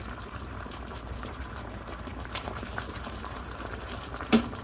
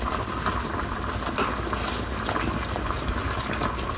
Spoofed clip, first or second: first